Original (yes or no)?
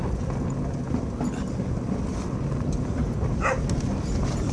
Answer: yes